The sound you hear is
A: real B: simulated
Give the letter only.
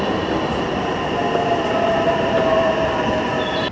A